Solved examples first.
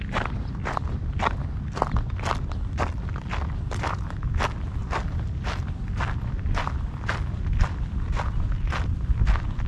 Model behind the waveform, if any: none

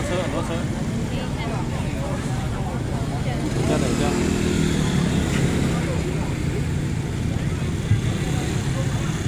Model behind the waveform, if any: none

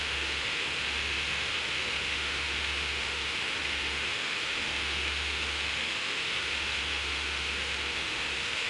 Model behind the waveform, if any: autoencoder, DAC-VAE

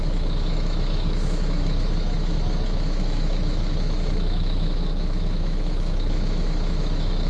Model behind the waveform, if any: autoencoder, DAC-VAE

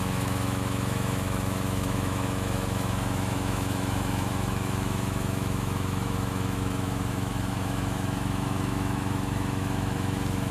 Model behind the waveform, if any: autoencoder, DAC-VAE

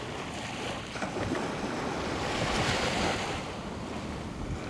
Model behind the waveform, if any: none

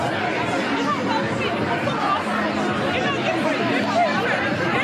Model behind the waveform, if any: none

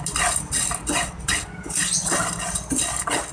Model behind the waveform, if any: none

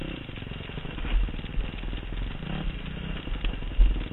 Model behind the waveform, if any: none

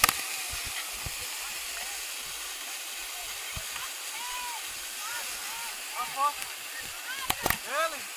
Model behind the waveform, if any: none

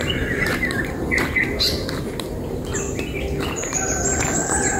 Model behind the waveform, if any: none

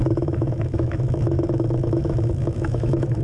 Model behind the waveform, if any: autoencoder, DAC-VAE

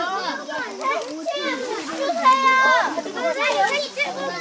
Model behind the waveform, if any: none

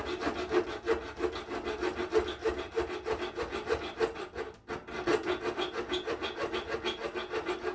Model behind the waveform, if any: none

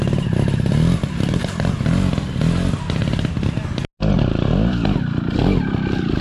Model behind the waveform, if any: none